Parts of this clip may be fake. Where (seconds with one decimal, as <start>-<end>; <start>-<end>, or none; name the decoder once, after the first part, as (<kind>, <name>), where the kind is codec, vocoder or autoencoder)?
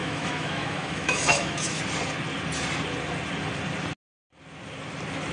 0.0-1.8 (autoencoder, DAC-VAE)